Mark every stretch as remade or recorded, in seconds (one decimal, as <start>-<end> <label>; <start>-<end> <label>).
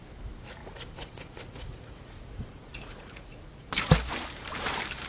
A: 0.0-0.6 recorded; 0.6-3.7 remade; 3.7-5.1 recorded